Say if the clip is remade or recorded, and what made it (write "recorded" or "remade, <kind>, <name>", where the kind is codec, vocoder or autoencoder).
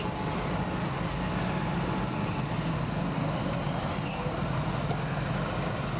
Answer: recorded